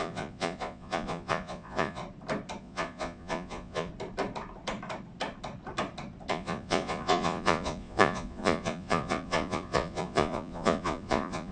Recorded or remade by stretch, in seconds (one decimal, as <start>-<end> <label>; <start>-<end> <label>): 0.0-2.0 remade; 2.0-2.6 recorded; 2.6-3.9 remade; 3.9-6.3 recorded; 6.3-11.5 remade